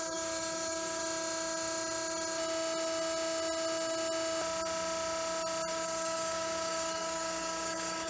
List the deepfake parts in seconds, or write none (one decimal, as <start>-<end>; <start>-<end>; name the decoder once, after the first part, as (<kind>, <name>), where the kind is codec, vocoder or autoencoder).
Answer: 0.0-1.0 (codec, DAC); 5.7-8.1